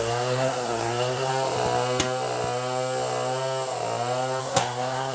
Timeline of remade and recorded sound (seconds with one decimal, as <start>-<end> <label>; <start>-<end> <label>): 0.0-1.3 remade; 1.3-4.4 recorded; 4.4-5.1 remade